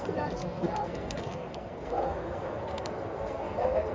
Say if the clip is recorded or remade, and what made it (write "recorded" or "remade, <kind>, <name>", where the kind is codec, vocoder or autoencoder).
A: remade, codec, SNAC